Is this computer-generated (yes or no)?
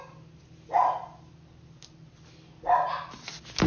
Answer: no